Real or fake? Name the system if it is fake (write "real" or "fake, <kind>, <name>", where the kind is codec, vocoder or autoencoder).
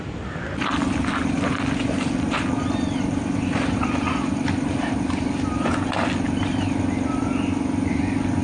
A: real